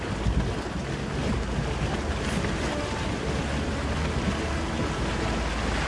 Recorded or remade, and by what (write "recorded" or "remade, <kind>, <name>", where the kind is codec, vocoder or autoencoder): recorded